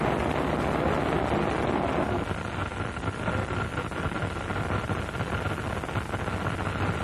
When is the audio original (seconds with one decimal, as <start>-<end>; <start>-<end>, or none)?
0.0-7.0